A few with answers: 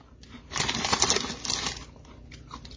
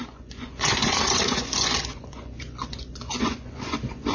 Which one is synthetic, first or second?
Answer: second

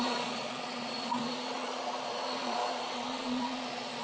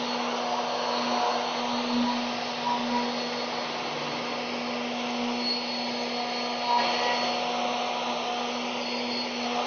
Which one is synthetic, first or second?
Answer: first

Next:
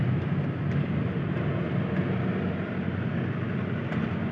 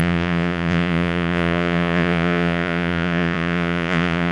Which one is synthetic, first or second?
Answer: second